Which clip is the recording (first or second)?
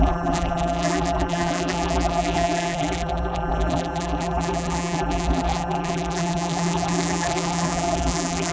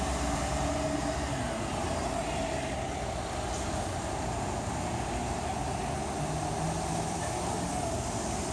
second